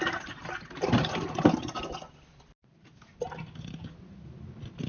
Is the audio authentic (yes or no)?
yes